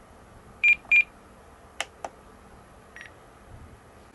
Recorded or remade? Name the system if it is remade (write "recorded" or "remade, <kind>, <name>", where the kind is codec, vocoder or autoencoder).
recorded